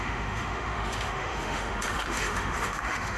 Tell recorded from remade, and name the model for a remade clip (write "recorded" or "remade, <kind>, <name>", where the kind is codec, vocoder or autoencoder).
remade, autoencoder, DAC-VAE